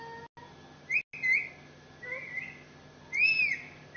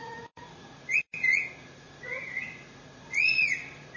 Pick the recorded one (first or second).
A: first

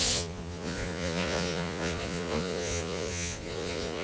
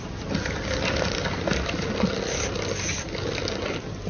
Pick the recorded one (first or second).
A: second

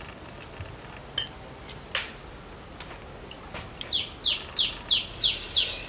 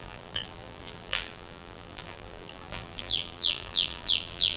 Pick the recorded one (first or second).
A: first